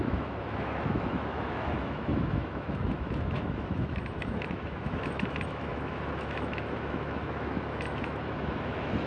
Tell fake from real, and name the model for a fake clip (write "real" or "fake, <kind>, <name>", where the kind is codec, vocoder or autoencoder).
fake, autoencoder, DAC-VAE